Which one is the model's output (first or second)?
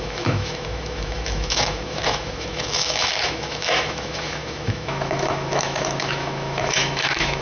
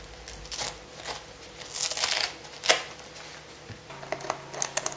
first